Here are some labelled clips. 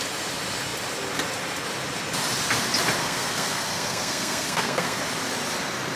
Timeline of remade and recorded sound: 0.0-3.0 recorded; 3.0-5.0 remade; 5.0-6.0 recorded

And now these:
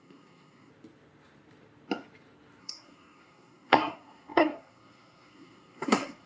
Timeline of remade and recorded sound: 0.0-0.7 remade; 0.7-2.6 recorded; 2.6-6.3 remade